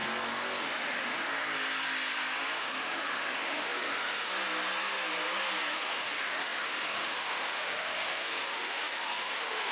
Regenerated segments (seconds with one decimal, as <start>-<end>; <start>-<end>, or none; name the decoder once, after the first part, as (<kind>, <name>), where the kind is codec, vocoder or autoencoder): 0.6-1.3 (autoencoder, DAC-VAE); 2.6-4.3; 5.7-9.7